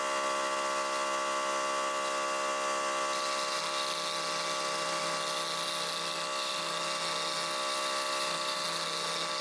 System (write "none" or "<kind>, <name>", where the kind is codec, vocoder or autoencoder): none